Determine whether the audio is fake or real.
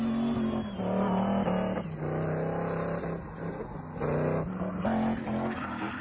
real